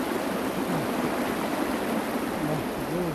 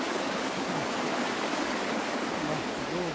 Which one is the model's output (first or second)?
second